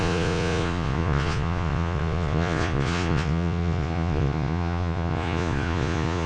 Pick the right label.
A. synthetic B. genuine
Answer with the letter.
A